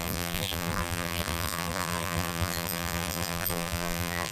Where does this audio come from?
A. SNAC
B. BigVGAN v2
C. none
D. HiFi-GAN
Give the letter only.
B